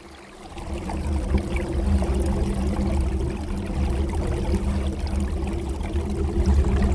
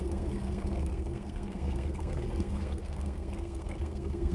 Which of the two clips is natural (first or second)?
first